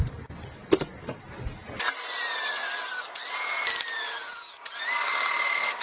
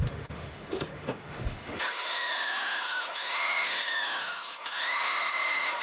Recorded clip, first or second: first